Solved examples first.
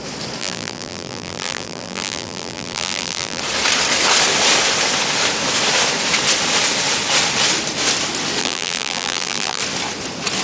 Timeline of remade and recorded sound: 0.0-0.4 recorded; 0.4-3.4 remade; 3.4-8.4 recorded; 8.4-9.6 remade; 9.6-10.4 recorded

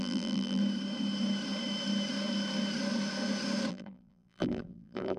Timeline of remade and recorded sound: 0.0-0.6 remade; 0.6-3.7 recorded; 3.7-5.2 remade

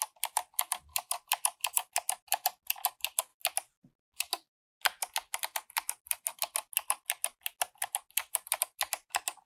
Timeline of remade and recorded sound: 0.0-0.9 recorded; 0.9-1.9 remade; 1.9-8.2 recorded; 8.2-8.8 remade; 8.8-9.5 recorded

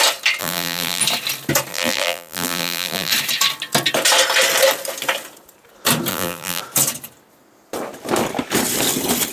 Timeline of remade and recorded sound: 0.0-0.4 recorded; 0.4-1.0 remade; 1.0-1.7 recorded; 1.7-3.1 remade; 3.1-6.1 recorded; 6.1-6.6 remade; 6.6-9.3 recorded